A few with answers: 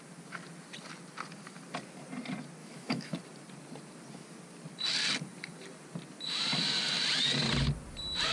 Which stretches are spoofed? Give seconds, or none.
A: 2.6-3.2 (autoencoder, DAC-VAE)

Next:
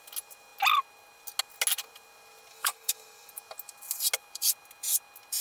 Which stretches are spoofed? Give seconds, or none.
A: 2.5-3.3 (codec, DAC)

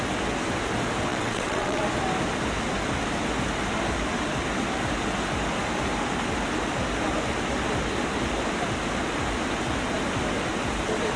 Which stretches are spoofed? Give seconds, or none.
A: 1.1-1.8 (vocoder, WaveNeXt)

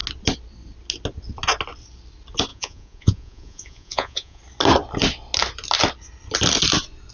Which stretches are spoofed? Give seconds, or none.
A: 2.5-4.4 (vocoder, Vocos)